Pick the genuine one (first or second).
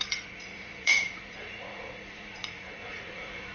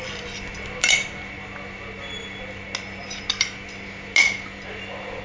second